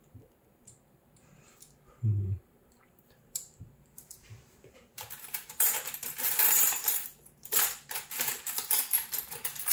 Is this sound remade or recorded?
remade